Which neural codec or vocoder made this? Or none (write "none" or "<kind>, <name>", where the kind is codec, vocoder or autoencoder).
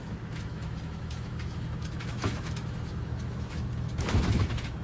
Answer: autoencoder, DAC-VAE